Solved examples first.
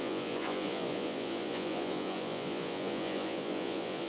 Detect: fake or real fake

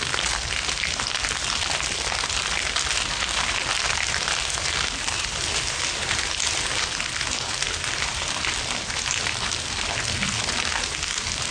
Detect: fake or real real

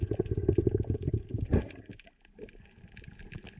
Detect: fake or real real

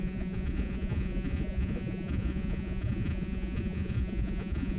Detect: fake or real fake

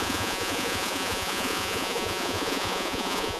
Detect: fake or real fake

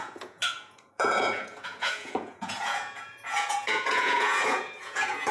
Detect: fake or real fake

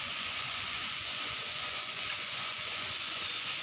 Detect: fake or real fake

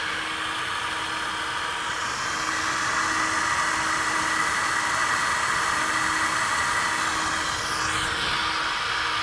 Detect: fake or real real